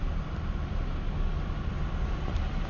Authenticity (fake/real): real